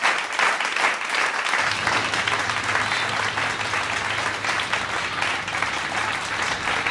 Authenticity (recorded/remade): recorded